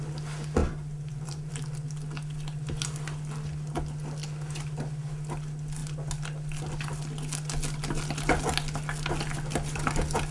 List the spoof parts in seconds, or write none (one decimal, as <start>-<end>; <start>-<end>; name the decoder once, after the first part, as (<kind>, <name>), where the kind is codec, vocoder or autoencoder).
0.6-1.5 (vocoder, BigVGAN v2)